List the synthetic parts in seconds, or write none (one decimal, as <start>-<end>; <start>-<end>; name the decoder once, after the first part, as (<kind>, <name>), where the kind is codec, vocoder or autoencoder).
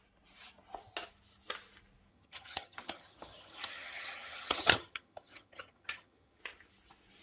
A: 2.1-6.4 (vocoder, HiFi-GAN)